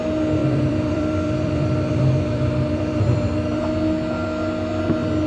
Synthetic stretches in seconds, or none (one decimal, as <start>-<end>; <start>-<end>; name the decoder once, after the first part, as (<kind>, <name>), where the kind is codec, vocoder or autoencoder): 0.4-3.6 (vocoder, BigVGAN v2)